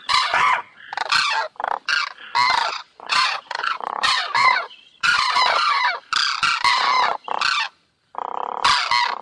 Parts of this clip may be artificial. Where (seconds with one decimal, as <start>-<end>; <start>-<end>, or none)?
0.0-0.9; 2.7-5.8